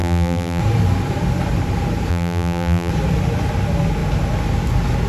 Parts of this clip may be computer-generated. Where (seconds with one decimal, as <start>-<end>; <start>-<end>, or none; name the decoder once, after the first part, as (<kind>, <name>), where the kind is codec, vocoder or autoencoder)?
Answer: 0.0-0.6 (vocoder, BigVGAN v2); 2.1-2.9